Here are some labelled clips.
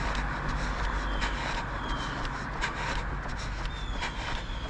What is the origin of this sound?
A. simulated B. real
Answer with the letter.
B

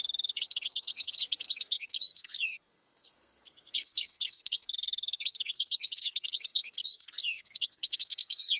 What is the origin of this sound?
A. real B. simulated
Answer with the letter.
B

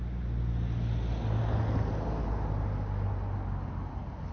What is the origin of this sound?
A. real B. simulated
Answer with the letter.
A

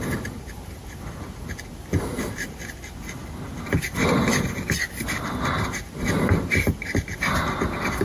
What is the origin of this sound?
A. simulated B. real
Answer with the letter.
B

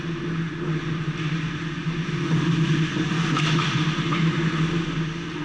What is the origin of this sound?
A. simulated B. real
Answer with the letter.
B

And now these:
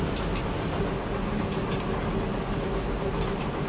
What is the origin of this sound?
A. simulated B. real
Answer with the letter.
B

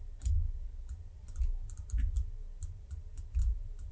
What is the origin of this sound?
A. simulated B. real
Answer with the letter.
B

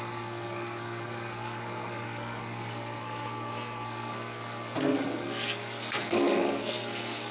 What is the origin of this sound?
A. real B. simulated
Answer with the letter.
B